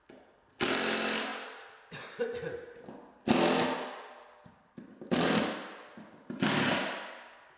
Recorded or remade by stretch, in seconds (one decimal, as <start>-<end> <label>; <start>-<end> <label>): 0.0-7.6 recorded